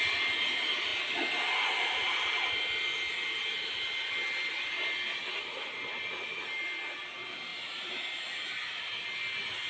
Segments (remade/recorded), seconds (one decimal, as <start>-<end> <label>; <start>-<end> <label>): 0.0-9.7 recorded